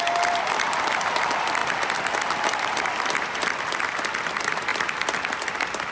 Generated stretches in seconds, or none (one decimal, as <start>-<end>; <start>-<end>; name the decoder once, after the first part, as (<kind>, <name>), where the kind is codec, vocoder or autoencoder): none